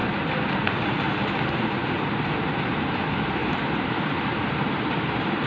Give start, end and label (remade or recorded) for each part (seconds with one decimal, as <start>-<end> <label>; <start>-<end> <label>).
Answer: 0.0-0.7 remade; 0.7-3.4 recorded; 3.4-5.5 remade